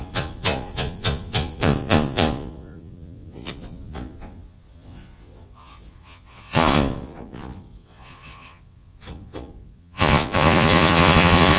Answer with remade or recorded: remade